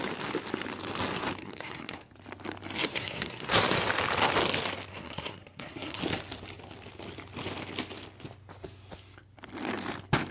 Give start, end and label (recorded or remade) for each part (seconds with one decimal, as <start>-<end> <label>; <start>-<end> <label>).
0.0-1.4 recorded; 1.4-2.1 remade; 2.1-2.8 recorded; 2.8-3.6 remade; 3.6-4.9 recorded; 4.9-6.0 remade; 6.0-10.3 recorded